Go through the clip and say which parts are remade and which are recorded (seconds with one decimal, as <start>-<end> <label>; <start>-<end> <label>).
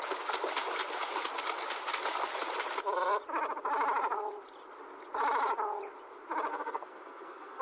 0.0-6.5 recorded; 6.5-7.6 remade